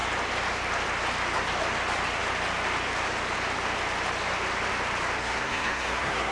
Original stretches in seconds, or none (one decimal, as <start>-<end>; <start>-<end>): 0.0-5.2